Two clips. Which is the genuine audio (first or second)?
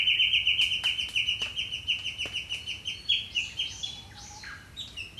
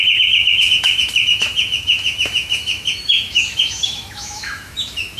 first